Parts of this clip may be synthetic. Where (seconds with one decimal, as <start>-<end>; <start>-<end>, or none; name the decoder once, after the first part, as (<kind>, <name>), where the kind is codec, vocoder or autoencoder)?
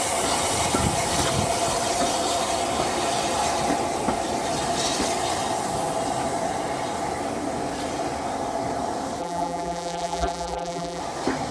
9.2-11.0 (vocoder, BigVGAN v2)